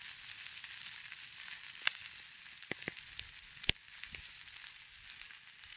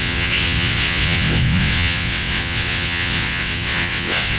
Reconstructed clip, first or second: second